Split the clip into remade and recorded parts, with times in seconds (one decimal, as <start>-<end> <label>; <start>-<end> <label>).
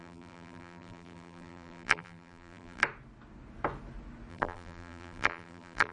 0.0-2.8 remade; 2.8-4.3 recorded; 4.3-5.9 remade